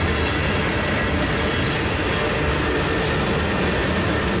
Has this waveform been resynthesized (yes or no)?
no